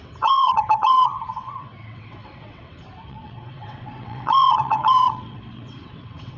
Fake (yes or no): yes